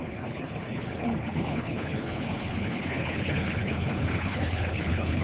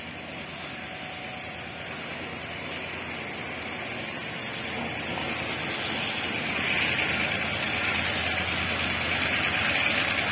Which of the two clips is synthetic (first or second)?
first